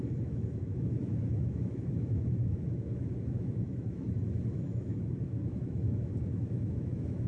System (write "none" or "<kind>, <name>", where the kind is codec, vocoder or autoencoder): autoencoder, DAC-VAE